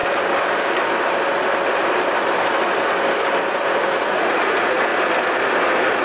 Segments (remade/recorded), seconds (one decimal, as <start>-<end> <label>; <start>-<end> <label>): 0.0-3.6 recorded; 3.6-4.9 remade; 4.9-6.0 recorded